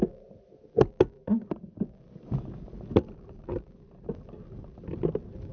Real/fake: real